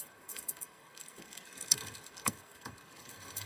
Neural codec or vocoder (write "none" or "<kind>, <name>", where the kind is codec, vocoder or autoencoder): codec, SNAC